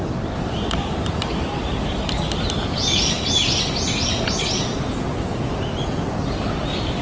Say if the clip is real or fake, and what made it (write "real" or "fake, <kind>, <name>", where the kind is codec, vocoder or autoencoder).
real